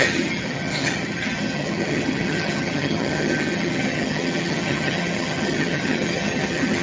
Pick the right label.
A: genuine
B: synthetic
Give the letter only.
B